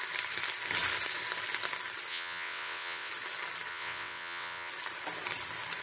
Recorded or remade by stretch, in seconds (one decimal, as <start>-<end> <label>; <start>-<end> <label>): 0.0-2.1 recorded; 2.1-3.1 remade; 3.1-3.7 recorded; 3.7-4.7 remade; 4.7-5.8 recorded